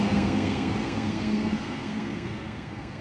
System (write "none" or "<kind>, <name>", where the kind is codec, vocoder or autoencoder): codec, SNAC